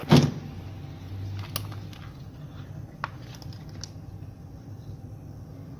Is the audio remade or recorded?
recorded